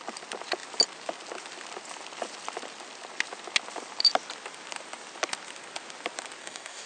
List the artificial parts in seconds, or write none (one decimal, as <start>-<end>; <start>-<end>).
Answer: 6.4-6.9